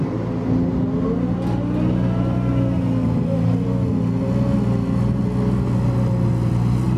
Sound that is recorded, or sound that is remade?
recorded